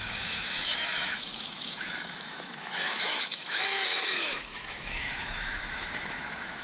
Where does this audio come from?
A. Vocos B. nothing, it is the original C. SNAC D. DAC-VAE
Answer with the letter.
D